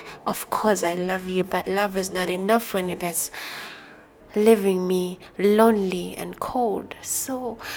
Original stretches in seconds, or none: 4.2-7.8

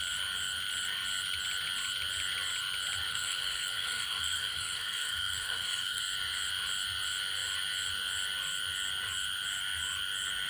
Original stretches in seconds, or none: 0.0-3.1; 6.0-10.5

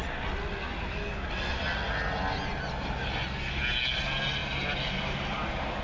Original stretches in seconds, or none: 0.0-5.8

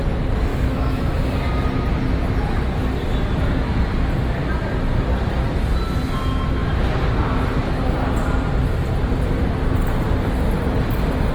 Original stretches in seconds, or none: 0.0-0.5; 1.0-11.3

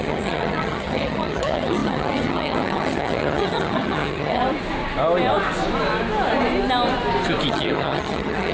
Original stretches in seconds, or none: 4.4-7.5